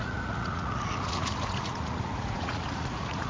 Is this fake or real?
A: fake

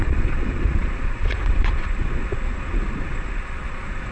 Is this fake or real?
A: fake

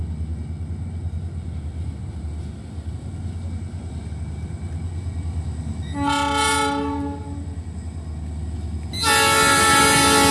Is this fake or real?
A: real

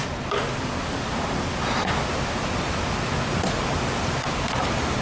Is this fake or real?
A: real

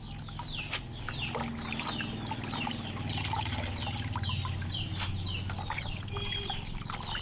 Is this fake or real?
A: real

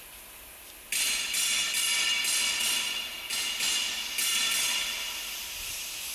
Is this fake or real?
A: real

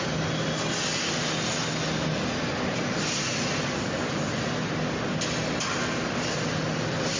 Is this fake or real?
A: real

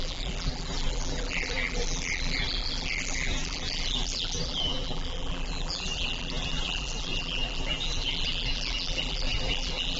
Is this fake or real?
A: fake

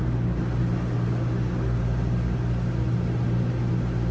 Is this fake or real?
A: real